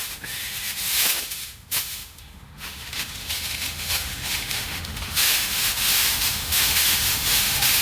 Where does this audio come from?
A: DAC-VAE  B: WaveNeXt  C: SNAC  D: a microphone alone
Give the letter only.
A